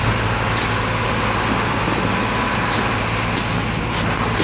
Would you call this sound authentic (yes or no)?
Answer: yes